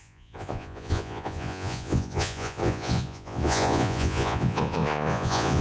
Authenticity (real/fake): fake